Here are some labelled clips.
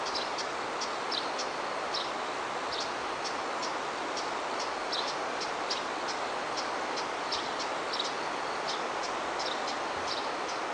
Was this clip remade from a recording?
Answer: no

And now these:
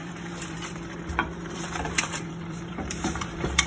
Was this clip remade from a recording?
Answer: yes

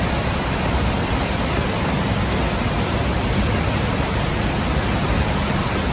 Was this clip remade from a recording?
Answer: yes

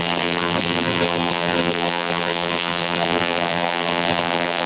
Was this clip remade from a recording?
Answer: yes